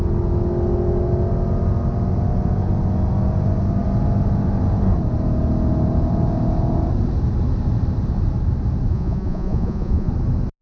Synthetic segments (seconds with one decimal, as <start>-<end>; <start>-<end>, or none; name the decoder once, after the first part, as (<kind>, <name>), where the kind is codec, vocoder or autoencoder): 8.9-10.1 (vocoder, Vocos)